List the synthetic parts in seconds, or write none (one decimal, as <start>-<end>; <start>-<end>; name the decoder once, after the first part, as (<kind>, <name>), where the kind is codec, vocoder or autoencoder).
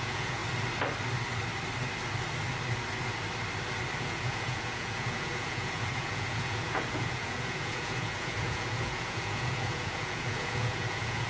0.0-0.4 (vocoder, Vocos); 4.0-11.3